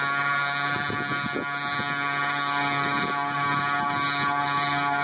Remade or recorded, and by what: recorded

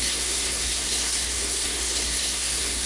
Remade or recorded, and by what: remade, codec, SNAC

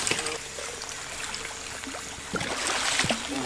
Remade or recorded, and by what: recorded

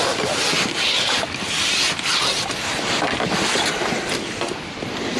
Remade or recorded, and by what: recorded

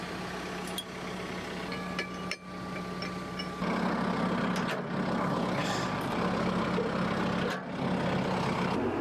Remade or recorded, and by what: recorded